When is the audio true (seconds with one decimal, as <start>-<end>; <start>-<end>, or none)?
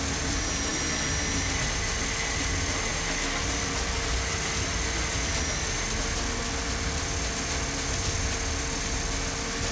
0.0-9.7